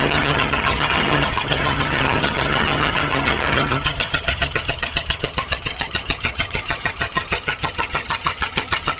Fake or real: fake